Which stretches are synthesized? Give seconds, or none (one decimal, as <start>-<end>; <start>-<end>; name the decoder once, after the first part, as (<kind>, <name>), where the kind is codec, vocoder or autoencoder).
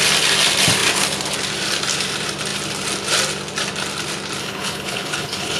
4.4-5.6 (codec, HILCodec)